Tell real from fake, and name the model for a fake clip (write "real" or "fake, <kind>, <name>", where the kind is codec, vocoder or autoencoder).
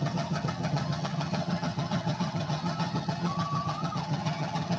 fake, vocoder, HiFi-GAN